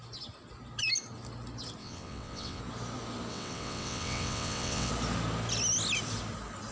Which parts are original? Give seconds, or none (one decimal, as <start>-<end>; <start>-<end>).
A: 0.0-1.8; 2.6-3.3; 4.9-6.7